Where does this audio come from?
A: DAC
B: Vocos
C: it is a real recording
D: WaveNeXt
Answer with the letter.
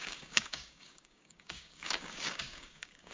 A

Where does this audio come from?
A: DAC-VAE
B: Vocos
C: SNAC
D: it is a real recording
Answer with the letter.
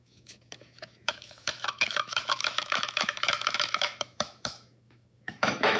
A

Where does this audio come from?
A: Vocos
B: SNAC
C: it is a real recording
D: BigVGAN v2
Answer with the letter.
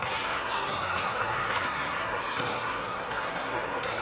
B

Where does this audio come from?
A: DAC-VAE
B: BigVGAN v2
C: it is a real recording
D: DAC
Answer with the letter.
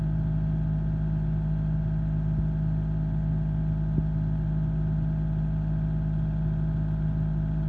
C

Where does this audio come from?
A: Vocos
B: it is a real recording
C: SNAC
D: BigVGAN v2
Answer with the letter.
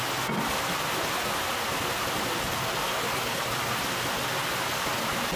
B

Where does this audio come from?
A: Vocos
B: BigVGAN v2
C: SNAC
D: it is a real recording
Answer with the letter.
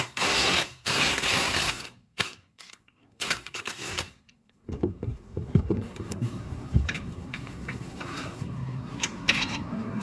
C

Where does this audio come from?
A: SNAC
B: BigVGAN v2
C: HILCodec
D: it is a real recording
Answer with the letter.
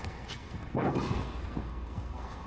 A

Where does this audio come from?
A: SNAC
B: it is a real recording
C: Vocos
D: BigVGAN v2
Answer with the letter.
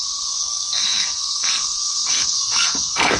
A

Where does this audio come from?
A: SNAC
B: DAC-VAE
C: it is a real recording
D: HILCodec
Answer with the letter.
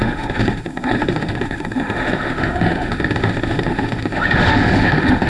B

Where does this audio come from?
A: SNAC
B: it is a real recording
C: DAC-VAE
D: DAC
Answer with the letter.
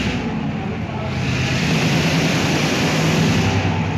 B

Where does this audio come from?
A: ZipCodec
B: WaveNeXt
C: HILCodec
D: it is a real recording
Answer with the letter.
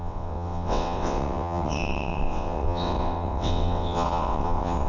B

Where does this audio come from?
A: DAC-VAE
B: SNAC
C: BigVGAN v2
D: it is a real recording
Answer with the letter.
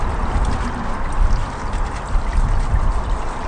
D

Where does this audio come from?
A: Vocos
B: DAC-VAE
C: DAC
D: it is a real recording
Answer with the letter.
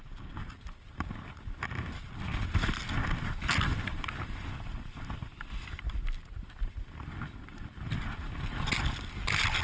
D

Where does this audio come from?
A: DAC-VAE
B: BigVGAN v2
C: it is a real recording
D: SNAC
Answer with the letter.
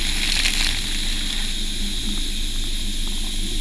C